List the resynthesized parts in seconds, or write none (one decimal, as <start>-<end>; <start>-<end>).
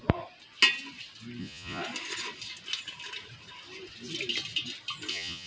1.4-1.8; 5.1-5.5